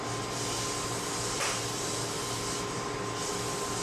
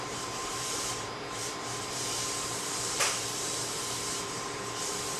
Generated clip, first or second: second